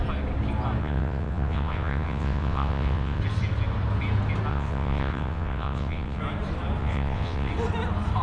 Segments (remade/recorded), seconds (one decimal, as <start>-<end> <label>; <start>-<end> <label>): 0.0-0.8 recorded; 0.8-3.2 remade; 3.2-4.5 recorded; 4.5-6.2 remade; 6.2-6.8 recorded; 6.8-7.5 remade; 7.5-8.2 recorded